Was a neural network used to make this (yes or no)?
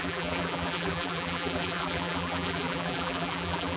yes